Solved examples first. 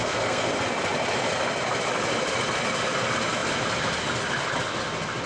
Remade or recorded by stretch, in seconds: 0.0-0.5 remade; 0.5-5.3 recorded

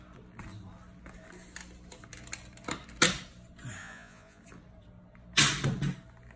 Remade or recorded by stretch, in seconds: 0.0-3.8 recorded; 3.8-4.4 remade; 4.4-6.4 recorded

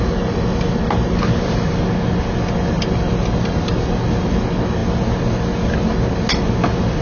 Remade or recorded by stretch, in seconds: 0.0-7.0 recorded